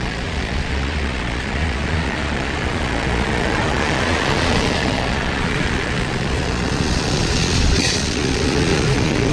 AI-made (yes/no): yes